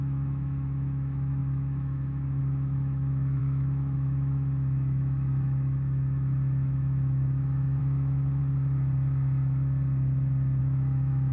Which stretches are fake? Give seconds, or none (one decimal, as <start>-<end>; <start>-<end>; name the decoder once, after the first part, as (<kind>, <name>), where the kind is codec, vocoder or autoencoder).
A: 0.0-8.4 (autoencoder, DAC-VAE); 10.6-11.3